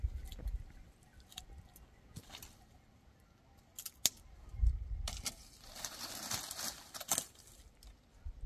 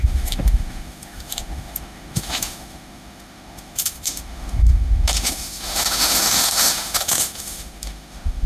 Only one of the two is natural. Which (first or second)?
first